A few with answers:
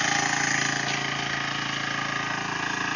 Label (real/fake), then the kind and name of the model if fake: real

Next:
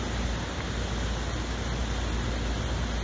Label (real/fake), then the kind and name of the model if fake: real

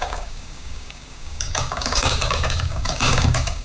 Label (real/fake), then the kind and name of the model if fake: fake, codec, DAC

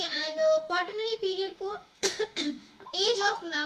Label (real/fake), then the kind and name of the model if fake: fake, autoencoder, DAC-VAE